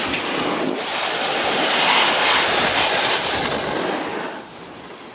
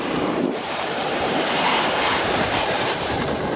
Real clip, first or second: first